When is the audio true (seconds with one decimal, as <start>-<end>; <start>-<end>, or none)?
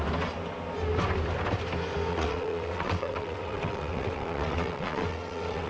0.0-2.1